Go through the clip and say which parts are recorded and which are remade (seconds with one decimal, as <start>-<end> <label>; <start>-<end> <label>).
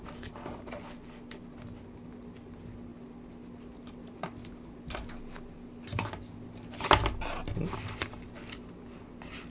0.0-9.5 recorded